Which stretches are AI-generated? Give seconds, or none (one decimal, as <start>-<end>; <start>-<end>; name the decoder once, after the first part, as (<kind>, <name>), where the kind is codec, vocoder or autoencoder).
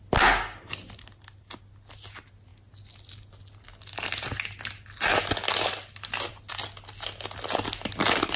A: none